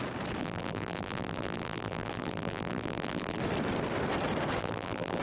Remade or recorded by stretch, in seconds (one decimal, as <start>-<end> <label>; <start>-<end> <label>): 0.0-0.4 recorded; 0.4-3.4 remade; 3.4-4.6 recorded; 4.6-5.2 remade